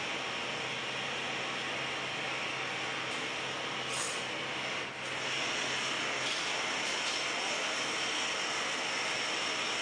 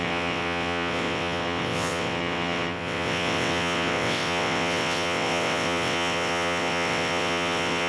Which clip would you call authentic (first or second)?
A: first